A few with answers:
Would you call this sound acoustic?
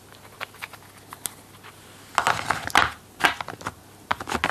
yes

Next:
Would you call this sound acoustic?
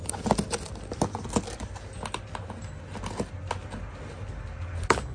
yes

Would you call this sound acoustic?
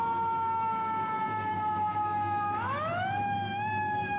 no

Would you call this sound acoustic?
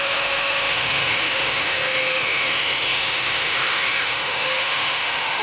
no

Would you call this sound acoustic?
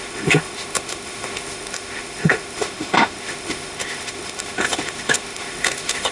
no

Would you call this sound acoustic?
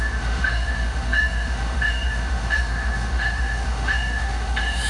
no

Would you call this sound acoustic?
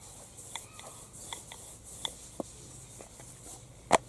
yes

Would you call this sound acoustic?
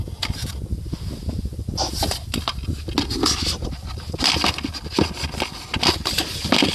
yes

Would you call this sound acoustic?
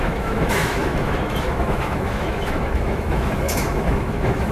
no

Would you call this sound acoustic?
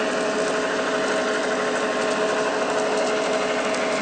yes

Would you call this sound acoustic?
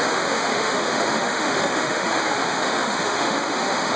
no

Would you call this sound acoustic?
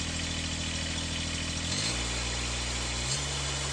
yes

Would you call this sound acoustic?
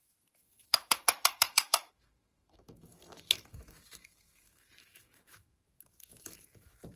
no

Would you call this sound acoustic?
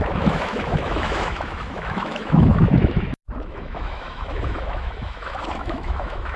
no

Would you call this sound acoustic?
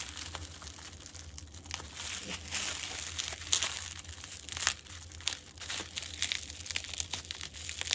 yes